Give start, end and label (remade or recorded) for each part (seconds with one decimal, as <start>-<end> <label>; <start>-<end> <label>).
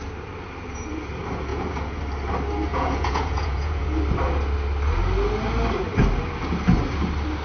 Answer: 0.0-1.5 recorded; 1.5-2.0 remade; 2.0-2.7 recorded; 2.7-4.0 remade; 4.0-7.4 recorded